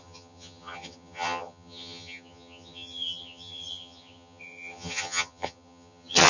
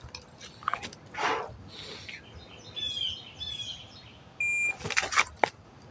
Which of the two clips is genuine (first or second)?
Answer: second